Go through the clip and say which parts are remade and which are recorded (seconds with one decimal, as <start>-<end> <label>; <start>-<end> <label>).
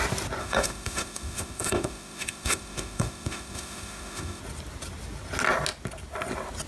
0.0-0.4 recorded; 0.4-4.4 remade; 4.4-6.7 recorded